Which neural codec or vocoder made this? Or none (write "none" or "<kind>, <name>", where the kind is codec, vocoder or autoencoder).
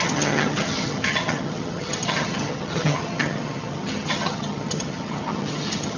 vocoder, HiFi-GAN